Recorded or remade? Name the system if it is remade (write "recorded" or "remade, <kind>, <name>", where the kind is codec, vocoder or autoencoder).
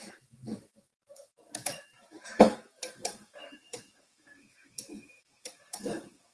remade, autoencoder, DAC-VAE